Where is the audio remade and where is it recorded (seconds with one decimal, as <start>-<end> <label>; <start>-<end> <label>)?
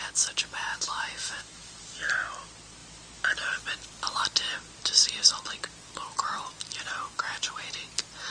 0.0-0.7 recorded; 0.7-1.8 remade; 1.8-8.3 recorded